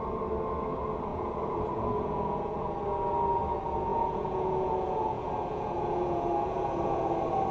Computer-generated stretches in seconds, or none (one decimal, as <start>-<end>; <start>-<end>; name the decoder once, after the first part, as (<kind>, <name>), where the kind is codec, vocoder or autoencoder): 1.1-2.7 (vocoder, Vocos); 3.9-7.0